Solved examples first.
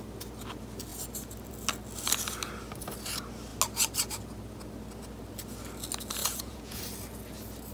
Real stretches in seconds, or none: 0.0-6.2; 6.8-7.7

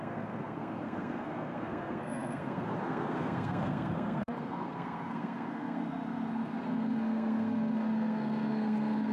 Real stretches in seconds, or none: none